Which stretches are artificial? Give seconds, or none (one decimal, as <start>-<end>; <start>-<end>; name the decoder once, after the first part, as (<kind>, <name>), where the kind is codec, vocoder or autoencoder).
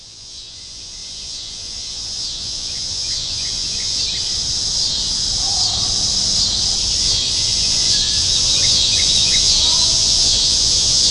0.0-4.0 (vocoder, Vocos); 7.0-11.1